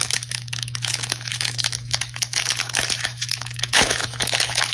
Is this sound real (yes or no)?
no